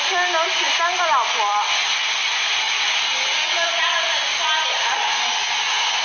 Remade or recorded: recorded